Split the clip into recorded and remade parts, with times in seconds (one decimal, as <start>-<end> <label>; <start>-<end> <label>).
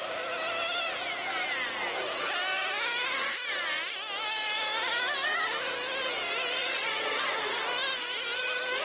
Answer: 0.0-6.6 recorded; 6.6-7.2 remade; 7.2-8.8 recorded